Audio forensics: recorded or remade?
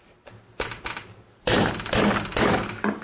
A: recorded